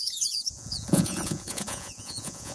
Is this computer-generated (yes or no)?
yes